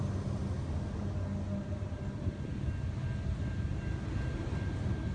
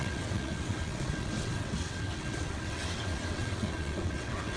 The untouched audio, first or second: first